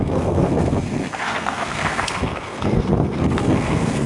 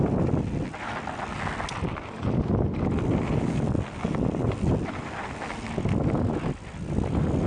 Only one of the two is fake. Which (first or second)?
first